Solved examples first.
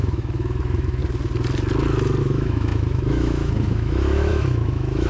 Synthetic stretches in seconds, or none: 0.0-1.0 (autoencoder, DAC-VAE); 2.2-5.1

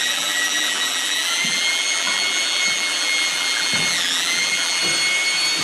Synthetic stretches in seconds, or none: 0.0-4.8 (vocoder, BigVGAN v2)

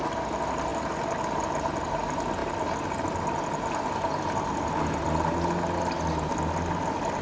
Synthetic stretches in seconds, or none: none

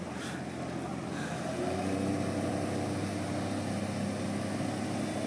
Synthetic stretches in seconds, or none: none